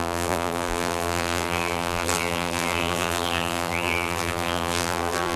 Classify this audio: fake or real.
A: fake